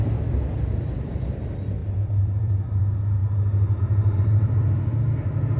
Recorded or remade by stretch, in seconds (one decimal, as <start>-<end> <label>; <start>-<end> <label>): 0.0-1.8 recorded; 1.8-2.8 remade; 2.8-5.6 recorded